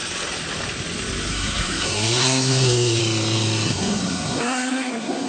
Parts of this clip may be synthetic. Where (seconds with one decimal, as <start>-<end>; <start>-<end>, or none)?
1.3-3.0; 3.7-5.3